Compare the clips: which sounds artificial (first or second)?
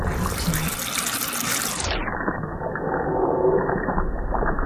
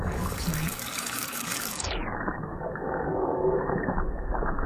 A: second